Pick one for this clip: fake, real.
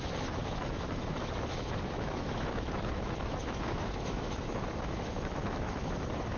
fake